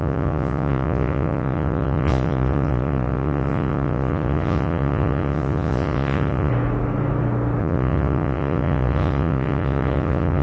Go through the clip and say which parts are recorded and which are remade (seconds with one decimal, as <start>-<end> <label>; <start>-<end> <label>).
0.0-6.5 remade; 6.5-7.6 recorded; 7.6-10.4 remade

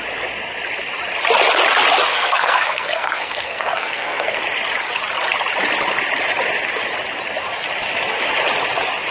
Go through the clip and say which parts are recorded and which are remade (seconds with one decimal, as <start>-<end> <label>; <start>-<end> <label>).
0.0-2.1 recorded; 2.1-4.4 remade; 4.4-9.1 recorded

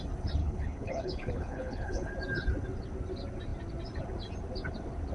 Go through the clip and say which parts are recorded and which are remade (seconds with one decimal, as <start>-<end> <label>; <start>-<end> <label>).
0.0-0.4 recorded; 0.4-2.1 remade; 2.1-5.1 recorded

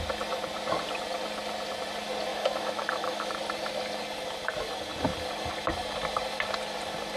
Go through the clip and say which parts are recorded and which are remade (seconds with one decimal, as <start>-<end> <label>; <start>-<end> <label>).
0.0-2.3 recorded; 2.3-3.3 remade; 3.3-7.2 recorded

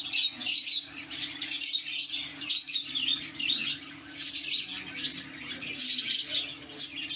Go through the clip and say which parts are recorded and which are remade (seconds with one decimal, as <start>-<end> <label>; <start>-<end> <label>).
0.0-0.4 recorded; 0.4-1.4 remade; 1.4-2.3 recorded; 2.3-4.3 remade; 4.3-7.2 recorded

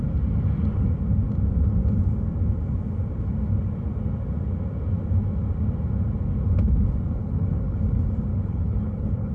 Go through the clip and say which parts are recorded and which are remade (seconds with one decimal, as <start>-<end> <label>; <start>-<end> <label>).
0.0-7.2 recorded; 7.2-7.8 remade; 7.8-8.3 recorded; 8.3-9.3 remade

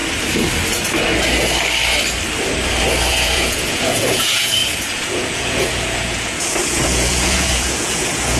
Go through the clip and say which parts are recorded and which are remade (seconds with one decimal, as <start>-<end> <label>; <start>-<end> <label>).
0.0-3.1 recorded; 3.1-8.4 remade

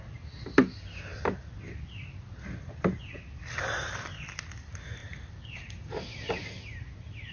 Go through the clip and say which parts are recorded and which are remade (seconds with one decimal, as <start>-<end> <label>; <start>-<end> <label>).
0.0-7.3 recorded